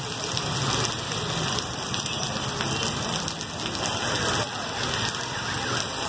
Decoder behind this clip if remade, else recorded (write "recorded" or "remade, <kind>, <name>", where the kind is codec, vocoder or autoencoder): recorded